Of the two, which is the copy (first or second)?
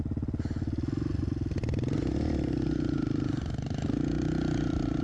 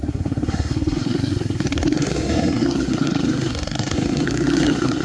second